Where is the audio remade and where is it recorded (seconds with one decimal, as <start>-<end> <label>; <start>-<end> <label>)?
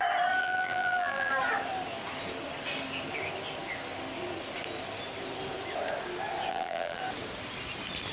0.0-0.4 recorded; 0.4-1.3 remade; 1.3-6.5 recorded; 6.5-7.0 remade; 7.0-8.1 recorded